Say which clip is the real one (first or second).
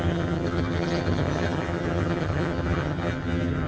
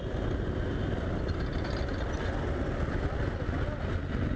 second